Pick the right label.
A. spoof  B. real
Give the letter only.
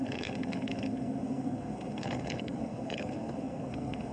A